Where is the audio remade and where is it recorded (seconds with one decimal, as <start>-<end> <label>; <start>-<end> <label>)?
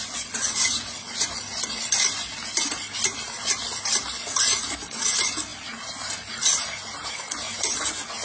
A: 0.0-8.2 recorded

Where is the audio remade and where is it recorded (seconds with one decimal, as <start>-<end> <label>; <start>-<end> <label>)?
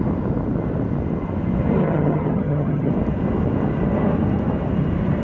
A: 0.0-1.8 recorded; 1.8-2.9 remade; 2.9-5.2 recorded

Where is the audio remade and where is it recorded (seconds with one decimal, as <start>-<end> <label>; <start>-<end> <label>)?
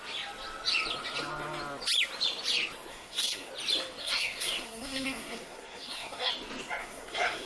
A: 0.0-2.9 recorded; 2.9-3.5 remade; 3.5-4.0 recorded; 4.0-6.3 remade; 6.3-6.8 recorded; 6.8-7.5 remade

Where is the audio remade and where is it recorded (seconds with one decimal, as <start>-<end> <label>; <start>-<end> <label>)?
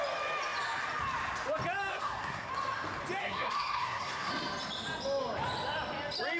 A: 0.0-1.9 recorded; 1.9-2.5 remade; 2.5-3.2 recorded; 3.2-4.3 remade; 4.3-6.4 recorded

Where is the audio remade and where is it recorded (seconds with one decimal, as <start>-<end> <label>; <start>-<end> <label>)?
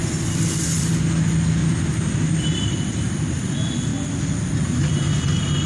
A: 0.0-1.6 recorded; 1.6-3.3 remade; 3.3-5.7 recorded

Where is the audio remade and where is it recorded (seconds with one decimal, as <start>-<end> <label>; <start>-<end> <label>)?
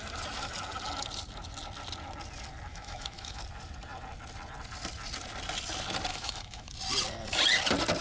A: 0.0-2.7 recorded; 2.7-3.4 remade; 3.4-6.1 recorded; 6.1-6.7 remade; 6.7-8.0 recorded